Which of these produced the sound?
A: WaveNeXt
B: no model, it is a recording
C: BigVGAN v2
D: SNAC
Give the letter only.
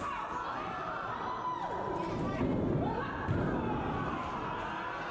B